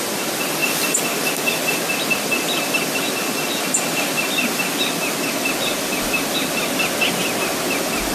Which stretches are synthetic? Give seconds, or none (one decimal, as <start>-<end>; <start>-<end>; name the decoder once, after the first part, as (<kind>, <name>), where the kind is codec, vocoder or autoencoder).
none